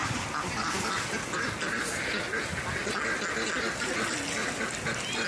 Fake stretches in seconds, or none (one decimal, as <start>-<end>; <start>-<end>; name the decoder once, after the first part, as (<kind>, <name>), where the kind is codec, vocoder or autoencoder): 0.0-1.8 (vocoder, BigVGAN v2)